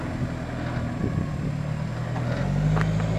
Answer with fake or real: real